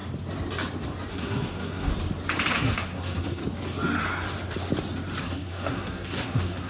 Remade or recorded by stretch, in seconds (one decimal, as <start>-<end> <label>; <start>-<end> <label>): 0.0-1.1 recorded; 1.1-1.9 remade; 1.9-2.5 recorded; 2.5-3.4 remade; 3.4-5.2 recorded; 5.2-6.7 remade